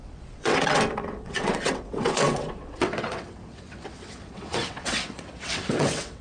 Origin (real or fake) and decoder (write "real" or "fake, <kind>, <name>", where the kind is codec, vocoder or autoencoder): fake, vocoder, WaveNeXt